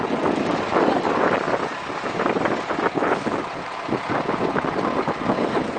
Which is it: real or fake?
real